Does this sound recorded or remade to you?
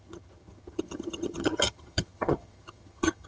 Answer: remade